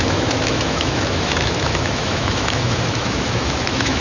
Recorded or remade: remade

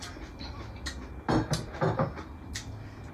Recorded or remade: recorded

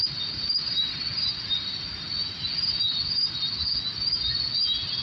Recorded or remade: recorded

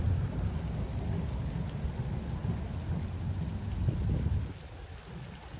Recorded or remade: recorded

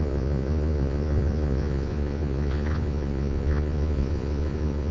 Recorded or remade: remade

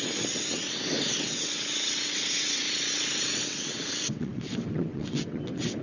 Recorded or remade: remade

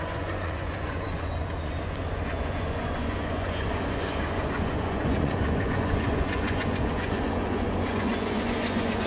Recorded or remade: remade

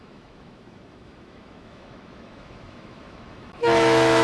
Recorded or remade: remade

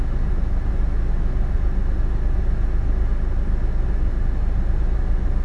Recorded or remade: recorded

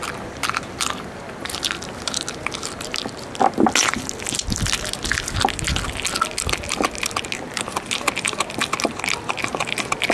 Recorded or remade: recorded